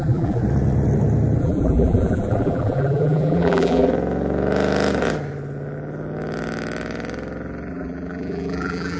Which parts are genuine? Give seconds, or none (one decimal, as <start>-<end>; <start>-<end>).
0.4-1.4; 3.9-7.7